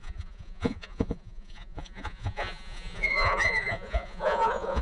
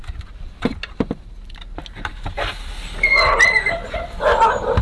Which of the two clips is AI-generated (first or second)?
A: first